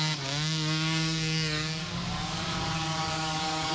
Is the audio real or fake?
fake